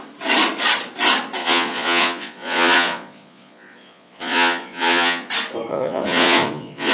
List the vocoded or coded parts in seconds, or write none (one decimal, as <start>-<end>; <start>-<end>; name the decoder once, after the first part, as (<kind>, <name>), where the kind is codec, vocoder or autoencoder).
1.4-5.3 (vocoder, Vocos); 5.7-6.9